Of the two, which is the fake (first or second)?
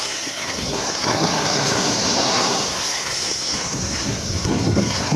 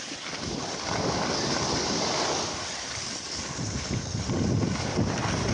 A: first